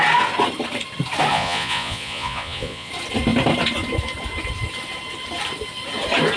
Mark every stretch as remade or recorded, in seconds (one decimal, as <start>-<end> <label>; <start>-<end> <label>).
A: 0.0-1.3 recorded; 1.3-2.9 remade; 2.9-6.4 recorded